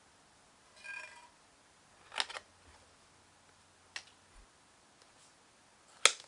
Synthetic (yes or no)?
no